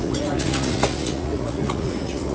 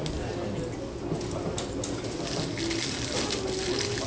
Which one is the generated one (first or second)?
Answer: first